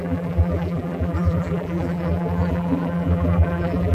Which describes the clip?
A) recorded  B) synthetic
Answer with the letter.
B